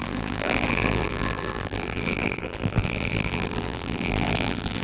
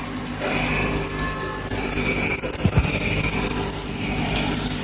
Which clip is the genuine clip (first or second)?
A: second